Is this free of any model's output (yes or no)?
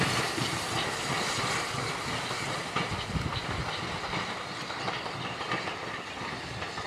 yes